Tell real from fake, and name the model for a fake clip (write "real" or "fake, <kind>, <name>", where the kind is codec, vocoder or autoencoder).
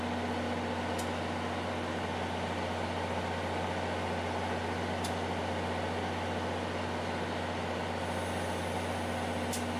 real